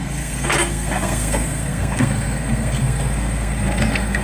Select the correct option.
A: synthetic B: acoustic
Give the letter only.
A